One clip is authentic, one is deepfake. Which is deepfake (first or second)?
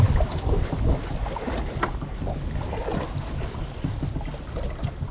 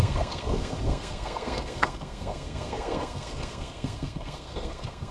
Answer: second